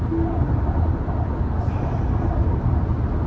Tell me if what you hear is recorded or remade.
recorded